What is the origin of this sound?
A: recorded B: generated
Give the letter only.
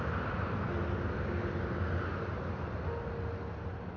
A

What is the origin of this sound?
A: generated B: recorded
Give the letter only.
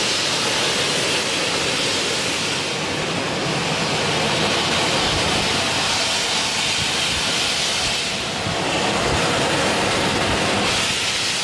B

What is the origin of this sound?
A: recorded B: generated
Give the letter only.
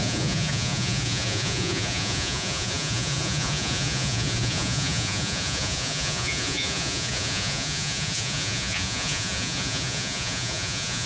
B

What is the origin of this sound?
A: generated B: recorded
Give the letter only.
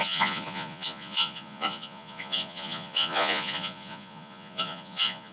A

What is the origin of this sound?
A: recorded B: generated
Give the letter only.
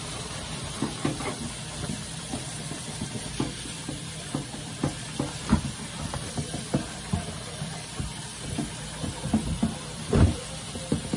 B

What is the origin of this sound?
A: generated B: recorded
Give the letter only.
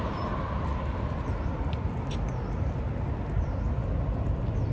B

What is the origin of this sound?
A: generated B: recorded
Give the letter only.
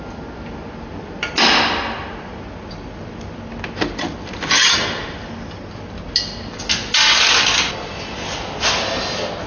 B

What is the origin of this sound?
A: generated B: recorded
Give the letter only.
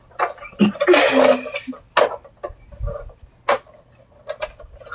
B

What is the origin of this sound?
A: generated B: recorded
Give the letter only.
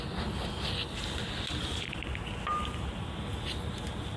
B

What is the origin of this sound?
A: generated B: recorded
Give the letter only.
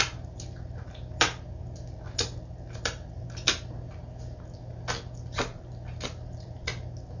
B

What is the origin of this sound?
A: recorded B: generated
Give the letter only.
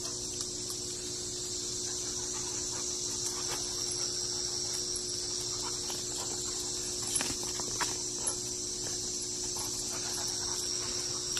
A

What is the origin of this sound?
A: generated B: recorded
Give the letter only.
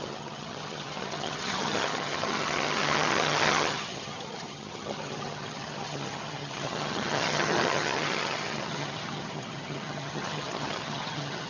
A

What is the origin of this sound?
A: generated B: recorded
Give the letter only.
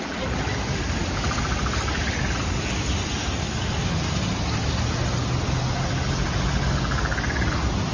B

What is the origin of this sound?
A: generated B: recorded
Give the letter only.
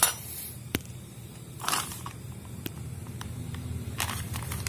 A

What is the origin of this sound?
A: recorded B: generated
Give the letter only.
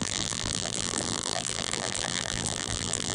B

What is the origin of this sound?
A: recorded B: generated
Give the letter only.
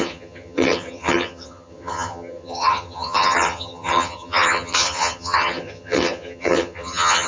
B